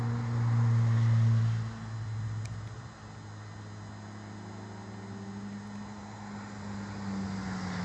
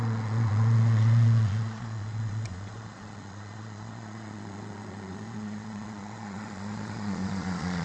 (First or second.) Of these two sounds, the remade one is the second